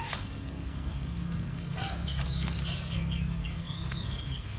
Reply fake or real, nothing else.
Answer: fake